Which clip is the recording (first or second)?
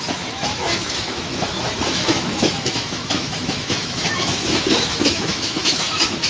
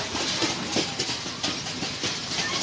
second